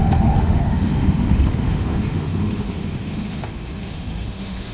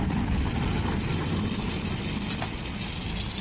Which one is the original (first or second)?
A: second